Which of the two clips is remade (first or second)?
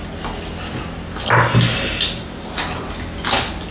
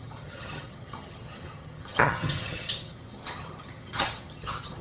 second